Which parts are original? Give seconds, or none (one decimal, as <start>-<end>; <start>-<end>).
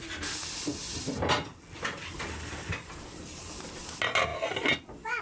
0.0-5.2